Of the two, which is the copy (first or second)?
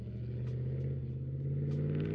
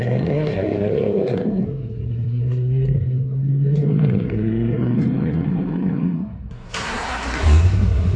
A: second